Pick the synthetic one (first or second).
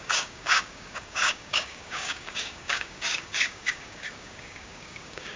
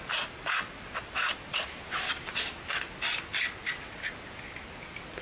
first